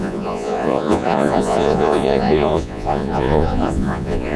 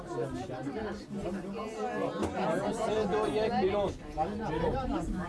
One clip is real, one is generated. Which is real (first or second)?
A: second